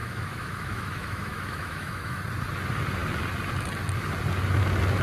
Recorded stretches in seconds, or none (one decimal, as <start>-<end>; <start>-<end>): 2.2-5.0